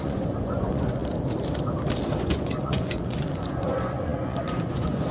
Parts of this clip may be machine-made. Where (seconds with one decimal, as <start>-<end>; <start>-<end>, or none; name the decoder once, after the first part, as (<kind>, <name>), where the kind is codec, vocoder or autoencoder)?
0.0-1.0 (vocoder, Vocos); 2.2-5.1